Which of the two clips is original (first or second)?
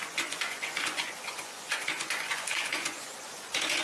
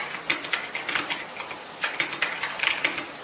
second